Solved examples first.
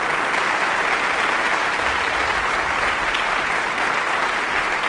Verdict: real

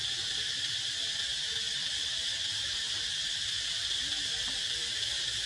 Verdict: real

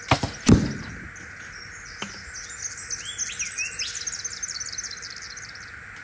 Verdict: real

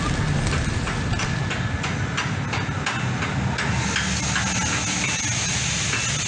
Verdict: real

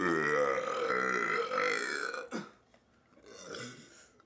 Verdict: real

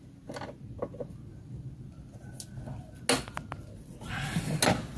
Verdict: real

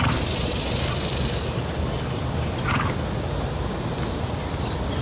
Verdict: real